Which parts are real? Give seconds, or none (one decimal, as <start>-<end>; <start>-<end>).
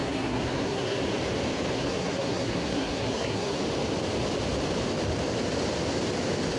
1.0-1.7; 3.6-6.6